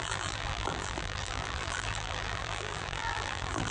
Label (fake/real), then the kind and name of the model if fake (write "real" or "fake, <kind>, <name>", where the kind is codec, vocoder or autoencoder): fake, vocoder, BigVGAN v2